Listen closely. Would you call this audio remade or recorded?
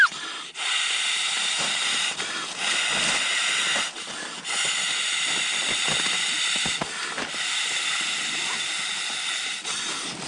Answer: recorded